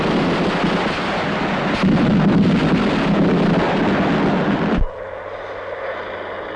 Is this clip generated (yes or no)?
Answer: no